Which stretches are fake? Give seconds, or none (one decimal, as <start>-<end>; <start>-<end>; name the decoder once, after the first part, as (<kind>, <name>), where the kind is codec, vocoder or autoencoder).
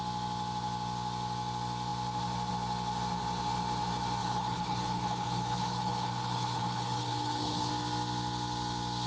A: 4.2-7.7 (codec, HILCodec)